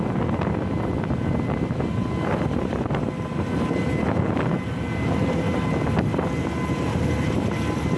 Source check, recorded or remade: recorded